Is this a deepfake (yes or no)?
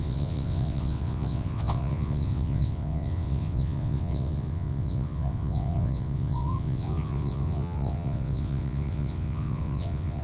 yes